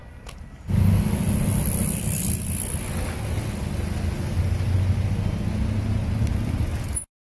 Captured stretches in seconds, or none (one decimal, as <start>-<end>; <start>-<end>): 0.0-7.2